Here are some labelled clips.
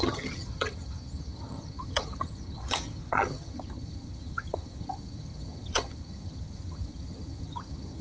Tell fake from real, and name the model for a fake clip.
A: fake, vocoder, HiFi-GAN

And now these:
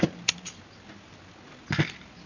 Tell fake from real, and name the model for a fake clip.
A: real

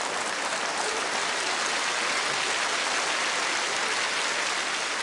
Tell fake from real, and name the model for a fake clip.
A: real